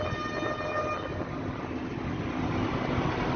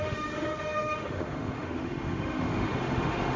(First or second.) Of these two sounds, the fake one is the second